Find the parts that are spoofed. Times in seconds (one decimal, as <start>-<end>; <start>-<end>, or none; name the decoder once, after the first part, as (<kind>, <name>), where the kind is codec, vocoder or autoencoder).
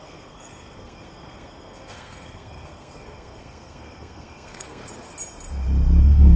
0.0-4.8 (codec, SNAC); 6.0-6.4